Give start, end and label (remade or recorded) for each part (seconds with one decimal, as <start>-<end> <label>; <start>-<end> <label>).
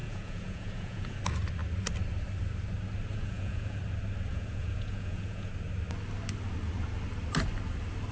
0.0-1.2 remade; 1.2-3.1 recorded; 3.1-3.8 remade; 3.8-4.3 recorded; 4.3-5.5 remade; 5.5-8.1 recorded